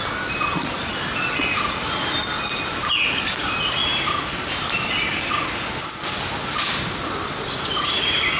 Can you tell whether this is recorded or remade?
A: recorded